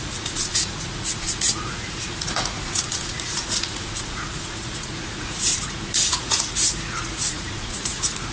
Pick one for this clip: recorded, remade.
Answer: remade